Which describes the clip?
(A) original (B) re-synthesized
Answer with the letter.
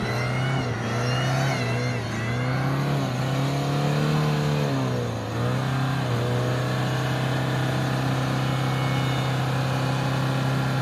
A